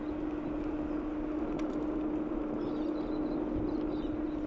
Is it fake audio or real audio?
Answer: real